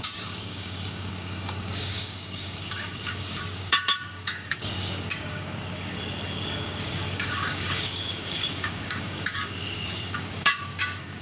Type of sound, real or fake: fake